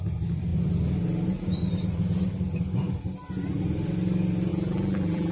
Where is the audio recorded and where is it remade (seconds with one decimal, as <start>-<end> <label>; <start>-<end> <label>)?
0.0-4.5 recorded; 4.5-5.3 remade